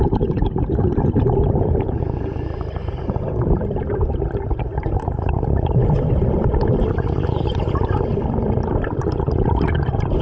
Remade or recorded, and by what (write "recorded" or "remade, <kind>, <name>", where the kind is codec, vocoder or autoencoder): remade, vocoder, BigVGAN v2